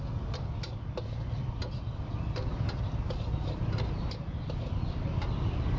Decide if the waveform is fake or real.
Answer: real